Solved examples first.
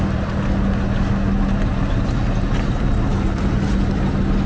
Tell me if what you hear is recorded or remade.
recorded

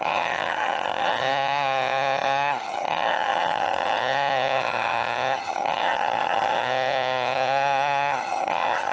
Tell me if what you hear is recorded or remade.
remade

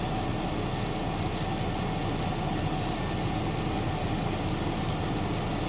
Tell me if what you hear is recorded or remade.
recorded